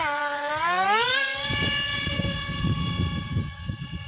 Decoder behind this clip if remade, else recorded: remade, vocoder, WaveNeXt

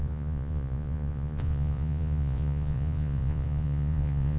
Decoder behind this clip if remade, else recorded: remade, vocoder, Vocos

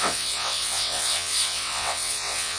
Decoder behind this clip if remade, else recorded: remade, vocoder, WaveNeXt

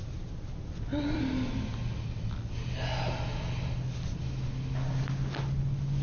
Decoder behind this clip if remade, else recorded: recorded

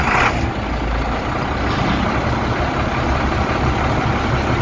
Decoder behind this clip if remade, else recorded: recorded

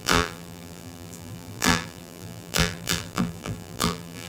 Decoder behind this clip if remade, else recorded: remade, vocoder, BigVGAN v2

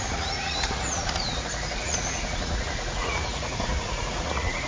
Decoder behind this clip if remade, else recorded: remade, vocoder, Vocos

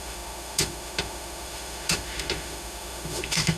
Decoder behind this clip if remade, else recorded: remade, autoencoder, DAC-VAE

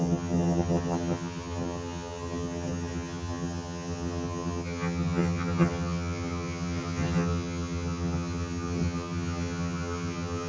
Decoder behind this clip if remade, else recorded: remade, vocoder, HiFi-GAN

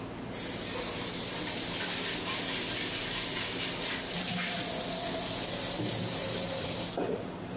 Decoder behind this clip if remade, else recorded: recorded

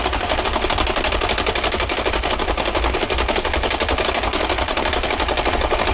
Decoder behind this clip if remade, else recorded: recorded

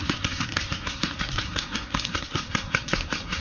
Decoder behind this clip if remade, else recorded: remade, codec, SNAC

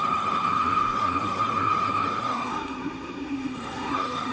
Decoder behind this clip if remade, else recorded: remade, codec, SNAC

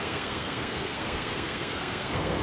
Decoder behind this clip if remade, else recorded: remade, codec, SNAC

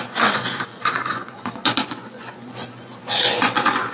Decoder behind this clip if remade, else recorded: remade, vocoder, Vocos